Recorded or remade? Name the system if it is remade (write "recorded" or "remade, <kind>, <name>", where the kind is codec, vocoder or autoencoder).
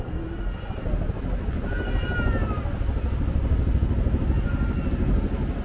recorded